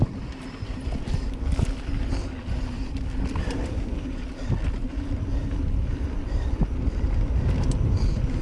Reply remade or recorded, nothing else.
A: recorded